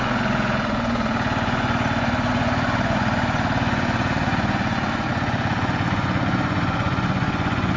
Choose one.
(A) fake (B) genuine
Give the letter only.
A